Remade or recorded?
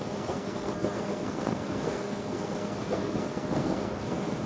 remade